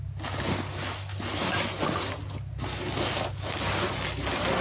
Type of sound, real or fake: real